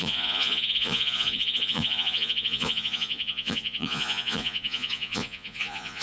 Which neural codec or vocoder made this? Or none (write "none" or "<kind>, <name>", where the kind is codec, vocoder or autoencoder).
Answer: vocoder, Vocos